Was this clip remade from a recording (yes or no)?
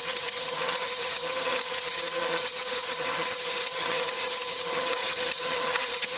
yes